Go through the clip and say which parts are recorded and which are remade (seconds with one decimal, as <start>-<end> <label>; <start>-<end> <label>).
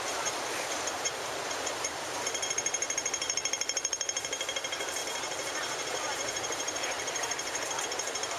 0.0-8.4 remade